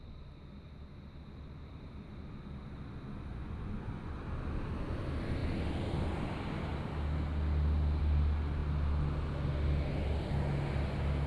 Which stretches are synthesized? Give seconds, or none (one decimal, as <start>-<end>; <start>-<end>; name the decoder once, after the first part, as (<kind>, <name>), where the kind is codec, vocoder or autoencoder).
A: 3.3-4.2 (vocoder, Vocos)